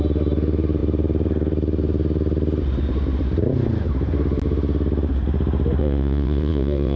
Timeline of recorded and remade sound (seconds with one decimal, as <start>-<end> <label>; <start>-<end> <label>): 0.0-5.8 recorded; 5.8-7.0 remade